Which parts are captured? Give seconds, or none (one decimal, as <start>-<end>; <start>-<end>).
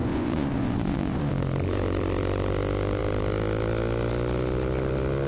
1.3-5.3